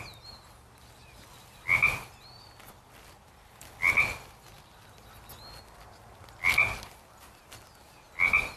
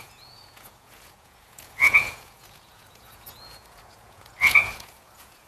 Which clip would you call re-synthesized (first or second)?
second